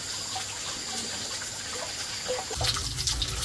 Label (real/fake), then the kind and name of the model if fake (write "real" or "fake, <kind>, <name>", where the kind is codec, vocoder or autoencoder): real